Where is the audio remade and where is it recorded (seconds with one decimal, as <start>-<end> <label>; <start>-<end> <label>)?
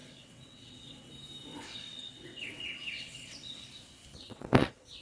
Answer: 0.0-1.1 remade; 1.1-1.5 recorded; 1.5-3.7 remade; 3.7-4.2 recorded; 4.2-5.0 remade